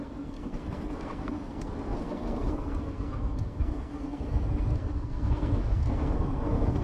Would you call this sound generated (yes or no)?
yes